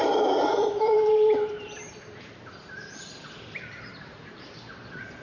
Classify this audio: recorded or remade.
remade